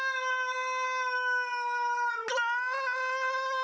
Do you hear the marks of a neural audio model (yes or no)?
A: no